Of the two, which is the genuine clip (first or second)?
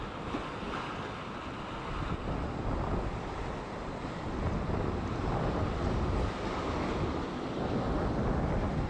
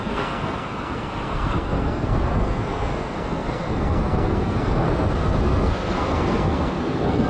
first